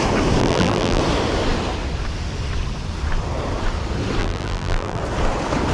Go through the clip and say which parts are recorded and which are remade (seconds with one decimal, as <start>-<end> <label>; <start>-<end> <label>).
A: 0.0-0.4 recorded; 0.4-1.0 remade; 1.0-4.2 recorded; 4.2-5.0 remade; 5.0-5.7 recorded